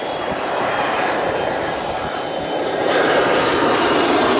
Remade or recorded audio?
remade